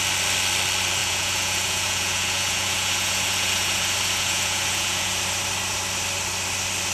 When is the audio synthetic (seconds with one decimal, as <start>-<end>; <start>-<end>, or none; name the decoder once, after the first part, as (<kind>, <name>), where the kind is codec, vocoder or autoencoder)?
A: 1.0-5.1 (vocoder, Vocos)